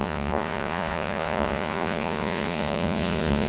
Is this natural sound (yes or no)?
no